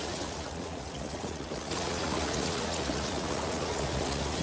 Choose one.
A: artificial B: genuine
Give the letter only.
A